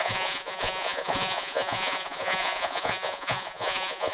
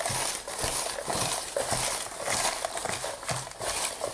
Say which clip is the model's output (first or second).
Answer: first